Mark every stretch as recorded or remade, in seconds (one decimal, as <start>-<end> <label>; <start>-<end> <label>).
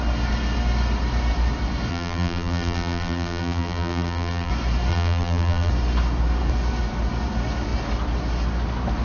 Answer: 0.0-1.9 recorded; 1.9-4.5 remade; 4.5-4.9 recorded; 4.9-5.7 remade; 5.7-9.0 recorded